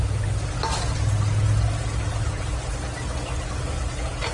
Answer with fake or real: real